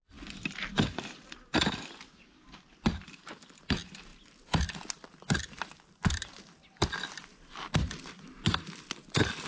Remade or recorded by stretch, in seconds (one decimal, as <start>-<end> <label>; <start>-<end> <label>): 0.0-9.5 recorded